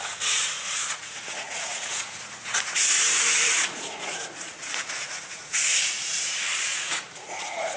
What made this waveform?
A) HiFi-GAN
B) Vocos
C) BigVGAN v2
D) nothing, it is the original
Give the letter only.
B